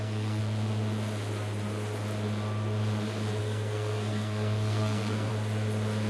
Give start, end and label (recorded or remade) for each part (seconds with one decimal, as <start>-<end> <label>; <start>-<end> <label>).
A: 0.0-0.4 remade; 0.4-3.4 recorded; 3.4-5.3 remade; 5.3-6.1 recorded